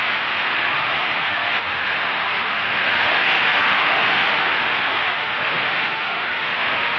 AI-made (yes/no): yes